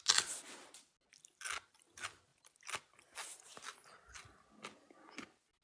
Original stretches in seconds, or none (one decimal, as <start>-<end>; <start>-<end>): 0.0-5.6